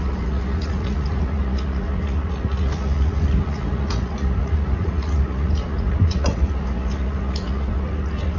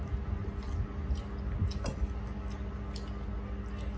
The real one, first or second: second